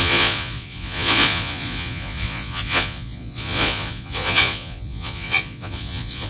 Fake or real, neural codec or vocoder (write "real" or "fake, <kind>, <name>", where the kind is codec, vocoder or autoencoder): fake, vocoder, Vocos